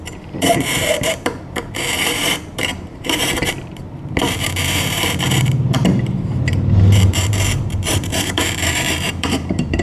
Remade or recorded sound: remade